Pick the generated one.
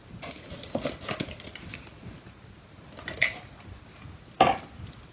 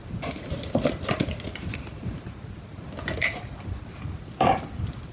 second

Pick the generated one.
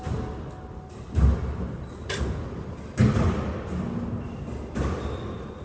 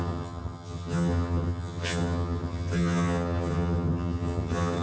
second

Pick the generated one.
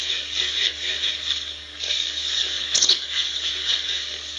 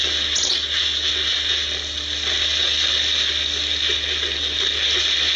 first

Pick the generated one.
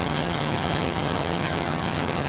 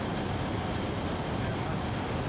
first